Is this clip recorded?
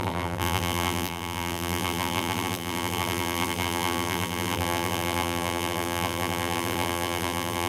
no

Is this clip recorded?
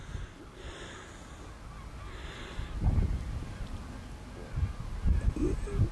yes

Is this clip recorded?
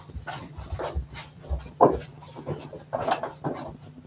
yes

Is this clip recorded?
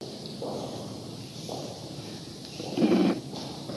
no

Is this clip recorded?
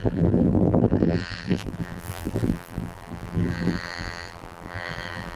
no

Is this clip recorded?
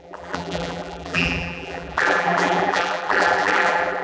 no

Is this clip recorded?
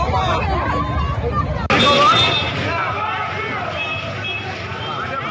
yes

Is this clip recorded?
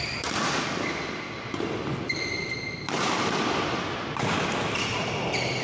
yes